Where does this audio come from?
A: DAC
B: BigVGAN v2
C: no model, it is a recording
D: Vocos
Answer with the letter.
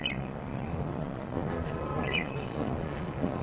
D